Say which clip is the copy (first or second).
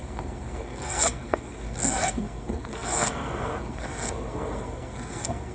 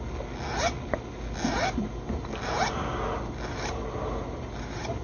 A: first